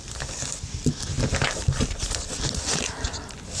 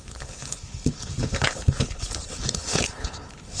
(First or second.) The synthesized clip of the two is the second